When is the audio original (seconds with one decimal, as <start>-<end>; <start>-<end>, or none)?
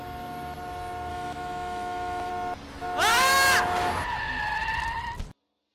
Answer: 0.0-1.1; 2.3-5.7